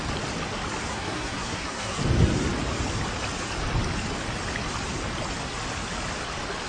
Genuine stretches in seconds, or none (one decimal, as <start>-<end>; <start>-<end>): 0.0-0.9; 2.0-6.7